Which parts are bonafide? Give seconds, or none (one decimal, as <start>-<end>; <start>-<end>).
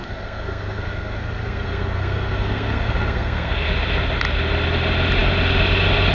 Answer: 3.7-6.1